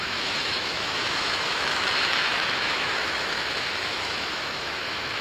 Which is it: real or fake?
fake